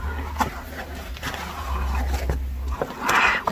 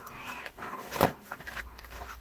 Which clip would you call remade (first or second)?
second